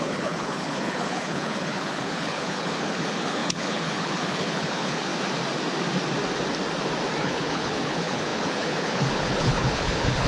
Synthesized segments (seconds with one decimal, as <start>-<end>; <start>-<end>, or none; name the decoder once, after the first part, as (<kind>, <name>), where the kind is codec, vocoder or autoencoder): 0.0-5.1 (codec, HILCodec); 7.2-10.3